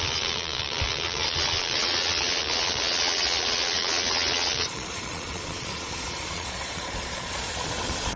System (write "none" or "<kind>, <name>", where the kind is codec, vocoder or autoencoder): vocoder, Vocos